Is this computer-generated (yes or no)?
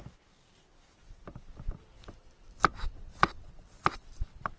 yes